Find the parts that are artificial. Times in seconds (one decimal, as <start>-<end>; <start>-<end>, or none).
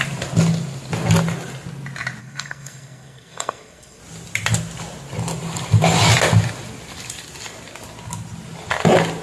2.2-4.0